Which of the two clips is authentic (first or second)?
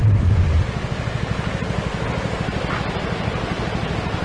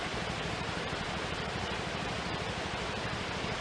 first